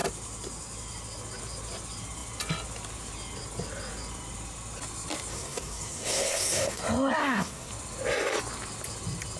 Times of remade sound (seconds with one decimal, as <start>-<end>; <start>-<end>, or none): 5.3-6.8; 7.2-7.7